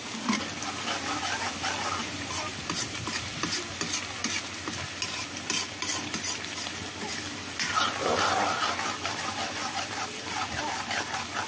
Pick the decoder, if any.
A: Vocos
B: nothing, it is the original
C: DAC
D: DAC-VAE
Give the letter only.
B